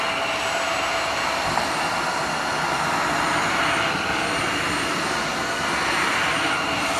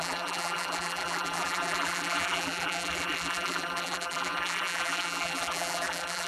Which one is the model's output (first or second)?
second